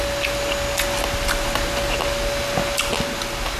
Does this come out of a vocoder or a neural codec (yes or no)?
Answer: no